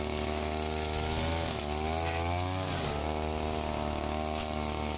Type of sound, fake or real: real